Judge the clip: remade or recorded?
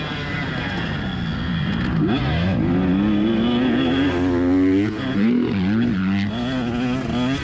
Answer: recorded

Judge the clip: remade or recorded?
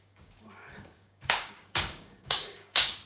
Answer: remade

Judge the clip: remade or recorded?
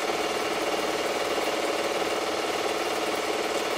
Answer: recorded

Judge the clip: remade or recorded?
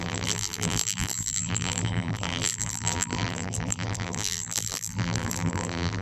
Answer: remade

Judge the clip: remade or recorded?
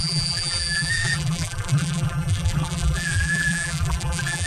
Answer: remade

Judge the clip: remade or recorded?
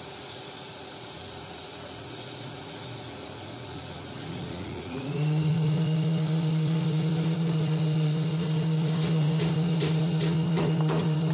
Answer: remade